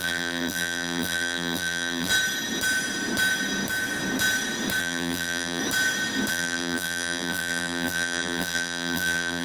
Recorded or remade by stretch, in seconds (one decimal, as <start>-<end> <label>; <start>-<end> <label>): 0.0-2.1 remade; 2.1-4.8 recorded; 4.8-5.6 remade; 5.6-6.3 recorded; 6.3-9.4 remade